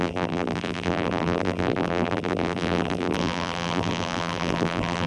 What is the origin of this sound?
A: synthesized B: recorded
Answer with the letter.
A